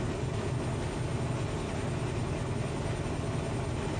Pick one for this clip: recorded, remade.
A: recorded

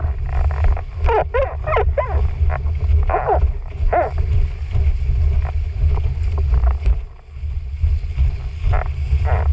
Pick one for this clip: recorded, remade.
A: recorded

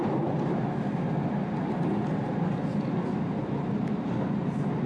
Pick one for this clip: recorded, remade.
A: recorded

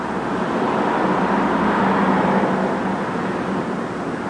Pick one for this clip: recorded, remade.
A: recorded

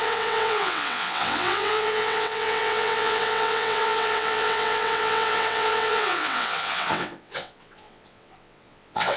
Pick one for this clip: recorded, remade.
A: remade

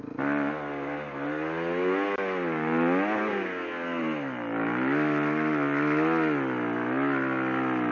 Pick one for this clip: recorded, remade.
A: recorded